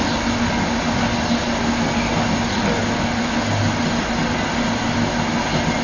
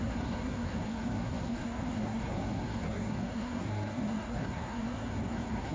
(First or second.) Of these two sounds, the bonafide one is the first